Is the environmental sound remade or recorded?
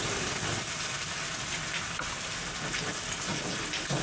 recorded